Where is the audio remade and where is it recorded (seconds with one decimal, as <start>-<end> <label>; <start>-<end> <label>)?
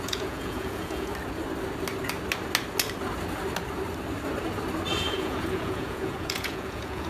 0.0-1.1 remade; 1.1-4.9 recorded; 4.9-7.1 remade